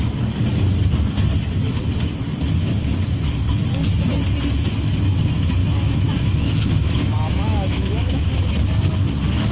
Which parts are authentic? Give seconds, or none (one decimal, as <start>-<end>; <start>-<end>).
0.0-5.6; 8.3-9.5